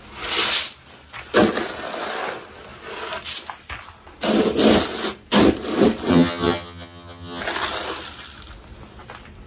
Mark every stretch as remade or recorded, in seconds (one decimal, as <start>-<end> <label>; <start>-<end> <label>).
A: 0.0-6.1 recorded; 6.1-7.4 remade; 7.4-9.5 recorded

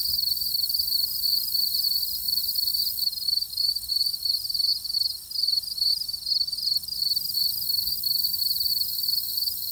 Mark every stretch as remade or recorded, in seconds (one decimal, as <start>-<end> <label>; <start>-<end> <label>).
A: 0.0-4.7 remade; 4.7-8.3 recorded; 8.3-9.7 remade

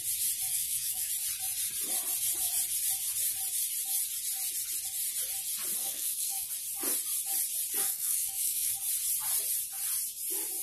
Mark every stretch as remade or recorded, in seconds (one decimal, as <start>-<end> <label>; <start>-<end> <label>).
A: 0.0-0.5 recorded; 0.5-1.1 remade; 1.1-5.8 recorded; 5.8-6.5 remade; 6.5-7.8 recorded; 7.8-8.7 remade; 8.7-10.6 recorded

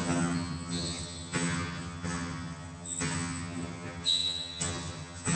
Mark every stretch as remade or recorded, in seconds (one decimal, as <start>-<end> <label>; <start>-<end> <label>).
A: 0.0-5.4 remade

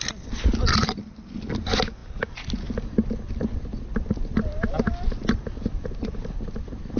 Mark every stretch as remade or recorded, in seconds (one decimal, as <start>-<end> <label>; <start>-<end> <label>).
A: 0.0-7.0 recorded

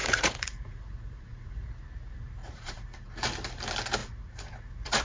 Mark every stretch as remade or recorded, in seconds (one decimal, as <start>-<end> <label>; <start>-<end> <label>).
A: 0.0-1.7 remade; 1.7-2.4 recorded; 2.4-3.1 remade; 3.1-4.0 recorded; 4.0-5.0 remade